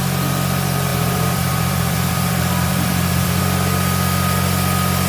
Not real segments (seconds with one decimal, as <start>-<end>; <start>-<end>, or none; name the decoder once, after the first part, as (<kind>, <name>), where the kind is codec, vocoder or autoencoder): 0.9-3.4 (vocoder, BigVGAN v2)

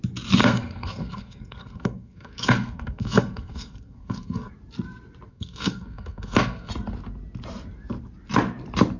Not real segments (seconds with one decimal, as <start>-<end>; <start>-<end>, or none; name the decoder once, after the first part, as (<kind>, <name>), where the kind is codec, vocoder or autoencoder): 0.4-4.5 (codec, SNAC); 5.3-6.7

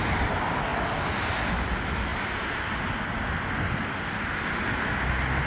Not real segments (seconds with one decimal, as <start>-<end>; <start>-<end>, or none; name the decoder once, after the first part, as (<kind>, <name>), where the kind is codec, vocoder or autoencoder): none